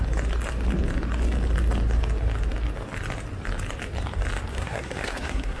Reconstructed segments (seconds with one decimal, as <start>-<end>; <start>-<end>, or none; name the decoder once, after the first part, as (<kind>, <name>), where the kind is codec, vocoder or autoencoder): 4.5-5.6 (codec, SNAC)